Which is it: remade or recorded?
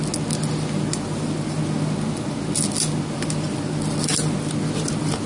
recorded